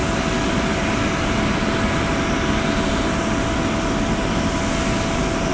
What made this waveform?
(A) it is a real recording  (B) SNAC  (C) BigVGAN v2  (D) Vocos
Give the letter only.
A